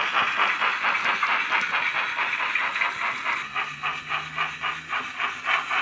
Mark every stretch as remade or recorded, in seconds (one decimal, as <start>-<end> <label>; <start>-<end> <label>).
0.0-5.8 recorded